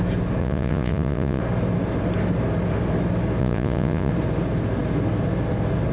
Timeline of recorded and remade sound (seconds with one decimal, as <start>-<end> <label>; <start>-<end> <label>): 0.0-0.4 recorded; 0.4-1.4 remade; 1.4-3.4 recorded; 3.4-4.1 remade; 4.1-5.9 recorded